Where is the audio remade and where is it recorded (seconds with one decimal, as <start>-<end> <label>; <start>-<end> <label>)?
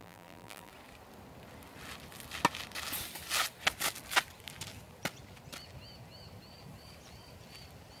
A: 0.0-0.7 remade; 0.7-8.0 recorded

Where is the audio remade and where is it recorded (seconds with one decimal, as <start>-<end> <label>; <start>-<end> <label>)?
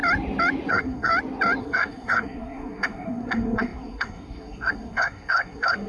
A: 0.0-0.7 recorded; 0.7-1.1 remade; 1.1-1.6 recorded; 1.6-5.9 remade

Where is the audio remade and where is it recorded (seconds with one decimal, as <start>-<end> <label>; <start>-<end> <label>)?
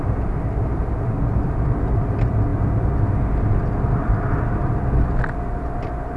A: 0.0-6.2 recorded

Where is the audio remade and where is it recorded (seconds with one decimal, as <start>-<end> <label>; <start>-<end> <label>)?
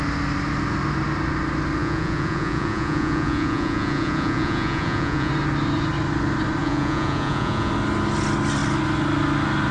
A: 0.0-1.8 recorded; 1.8-5.3 remade; 5.3-6.6 recorded; 6.6-7.7 remade; 7.7-9.7 recorded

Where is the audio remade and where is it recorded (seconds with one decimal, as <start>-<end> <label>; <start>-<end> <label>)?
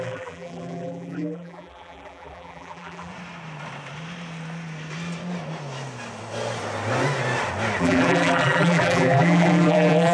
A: 0.0-3.1 remade; 3.1-7.8 recorded; 7.8-10.1 remade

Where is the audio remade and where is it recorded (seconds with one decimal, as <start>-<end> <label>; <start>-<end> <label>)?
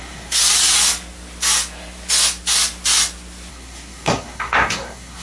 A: 0.0-0.4 remade; 0.4-3.5 recorded; 3.5-5.2 remade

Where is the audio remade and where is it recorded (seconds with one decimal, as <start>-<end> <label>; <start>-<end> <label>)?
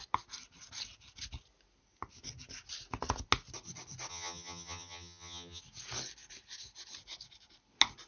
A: 0.0-4.1 recorded; 4.1-5.6 remade; 5.6-8.1 recorded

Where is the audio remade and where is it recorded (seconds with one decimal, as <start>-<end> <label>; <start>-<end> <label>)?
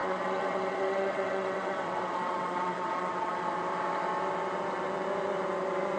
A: 0.0-3.3 remade; 3.3-6.0 recorded